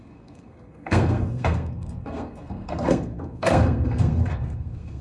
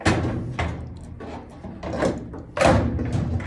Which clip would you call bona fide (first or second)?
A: second